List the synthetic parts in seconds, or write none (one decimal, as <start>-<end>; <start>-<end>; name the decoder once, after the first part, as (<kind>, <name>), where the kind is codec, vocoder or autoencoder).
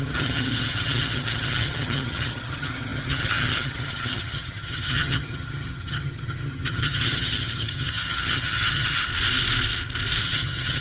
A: 0.0-9.1 (vocoder, HiFi-GAN); 10.2-10.8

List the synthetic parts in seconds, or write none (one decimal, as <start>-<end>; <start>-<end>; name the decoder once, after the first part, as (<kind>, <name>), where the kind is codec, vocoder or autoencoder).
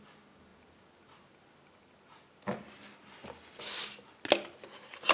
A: none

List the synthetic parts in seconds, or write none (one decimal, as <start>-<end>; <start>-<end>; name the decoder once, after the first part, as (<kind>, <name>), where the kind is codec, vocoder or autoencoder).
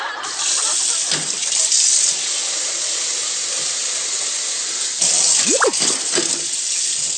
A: none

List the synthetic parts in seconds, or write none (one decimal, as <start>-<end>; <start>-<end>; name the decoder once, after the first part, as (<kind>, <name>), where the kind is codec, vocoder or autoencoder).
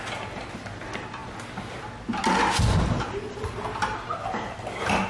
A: none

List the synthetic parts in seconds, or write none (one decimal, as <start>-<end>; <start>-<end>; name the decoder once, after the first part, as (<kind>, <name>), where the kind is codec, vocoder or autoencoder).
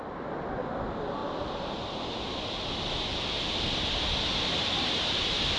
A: 4.3-5.6 (vocoder, BigVGAN v2)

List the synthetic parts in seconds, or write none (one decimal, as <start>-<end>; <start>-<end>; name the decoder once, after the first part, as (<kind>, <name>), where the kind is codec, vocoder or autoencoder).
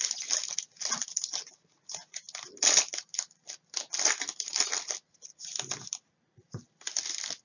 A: 1.7-2.3 (vocoder, Vocos)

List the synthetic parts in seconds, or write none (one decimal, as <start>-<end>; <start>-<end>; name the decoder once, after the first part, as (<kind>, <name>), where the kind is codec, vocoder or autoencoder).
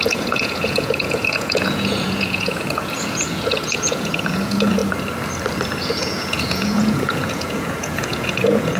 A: 0.0-4.8 (vocoder, Vocos); 5.8-8.8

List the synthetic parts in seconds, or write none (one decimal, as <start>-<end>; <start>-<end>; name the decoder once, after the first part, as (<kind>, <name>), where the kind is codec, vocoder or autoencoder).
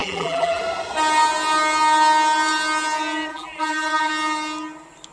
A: 0.0-0.6 (vocoder, BigVGAN v2); 3.3-4.1